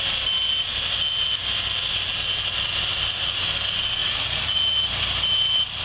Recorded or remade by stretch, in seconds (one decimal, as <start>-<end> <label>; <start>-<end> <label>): 0.0-4.0 recorded; 4.0-4.6 remade; 4.6-5.8 recorded